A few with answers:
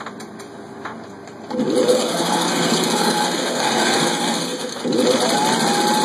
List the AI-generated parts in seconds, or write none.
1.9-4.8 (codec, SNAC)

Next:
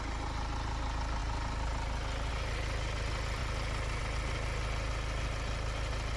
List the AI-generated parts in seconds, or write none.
none

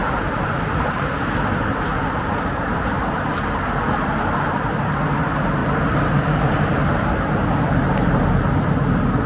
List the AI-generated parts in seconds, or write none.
0.0-1.0 (vocoder, BigVGAN v2); 1.9-3.3; 5.6-8.2

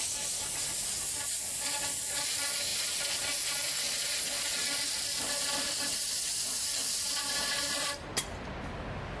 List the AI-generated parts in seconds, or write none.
none

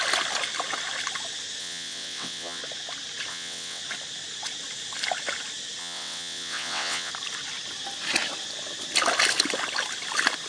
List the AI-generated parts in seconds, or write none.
1.6-2.6 (vocoder, WaveNeXt); 3.3-3.8; 5.8-7.1

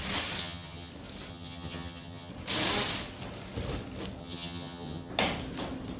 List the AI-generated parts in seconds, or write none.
0.4-0.9 (vocoder, HiFi-GAN); 1.3-2.3; 4.2-5.1

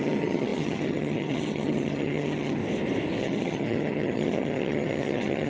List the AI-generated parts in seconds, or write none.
0.0-2.6 (vocoder, HiFi-GAN); 3.2-5.5

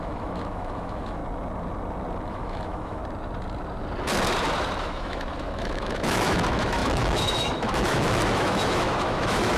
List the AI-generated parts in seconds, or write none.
0.0-1.2 (autoencoder, DAC-VAE); 2.3-3.0; 4.8-9.6